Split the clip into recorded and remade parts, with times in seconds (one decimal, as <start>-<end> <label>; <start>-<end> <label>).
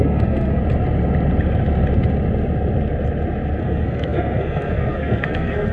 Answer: 0.0-0.6 remade; 0.6-3.6 recorded; 3.6-5.7 remade